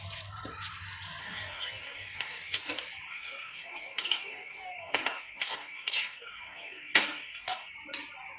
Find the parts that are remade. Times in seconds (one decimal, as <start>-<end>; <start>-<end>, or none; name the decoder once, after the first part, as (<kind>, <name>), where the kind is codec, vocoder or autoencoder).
1.2-2.7 (codec, DAC); 3.1-7.7